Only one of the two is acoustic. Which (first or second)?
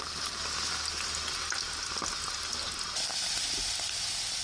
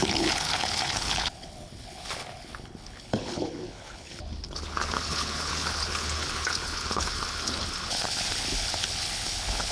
first